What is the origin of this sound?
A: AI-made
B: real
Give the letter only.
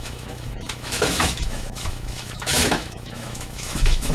A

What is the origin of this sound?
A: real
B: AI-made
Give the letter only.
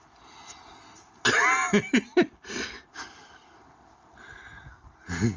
A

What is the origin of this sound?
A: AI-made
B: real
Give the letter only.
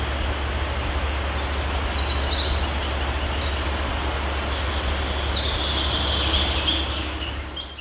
B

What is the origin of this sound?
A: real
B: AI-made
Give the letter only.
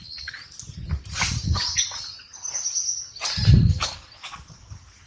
A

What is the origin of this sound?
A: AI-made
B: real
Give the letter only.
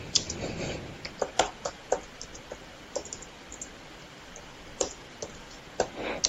B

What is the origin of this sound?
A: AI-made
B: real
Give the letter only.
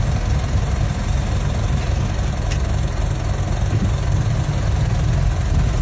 B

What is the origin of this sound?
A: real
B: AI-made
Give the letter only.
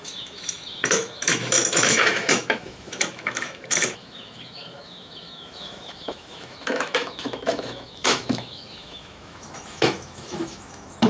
B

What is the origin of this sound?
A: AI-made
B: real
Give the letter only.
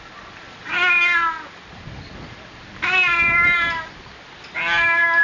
B